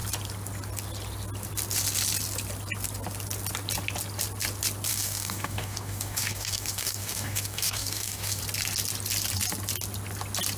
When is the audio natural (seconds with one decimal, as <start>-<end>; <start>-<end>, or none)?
0.0-4.9; 8.4-10.6